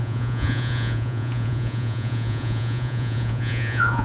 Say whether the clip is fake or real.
fake